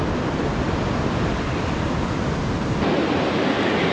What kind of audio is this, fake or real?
real